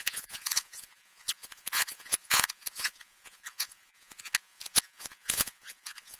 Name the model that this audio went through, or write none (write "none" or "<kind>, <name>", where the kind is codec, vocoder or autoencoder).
vocoder, Vocos